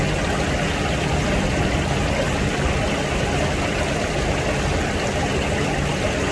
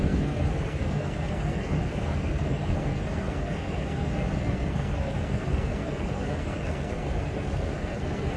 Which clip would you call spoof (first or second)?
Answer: second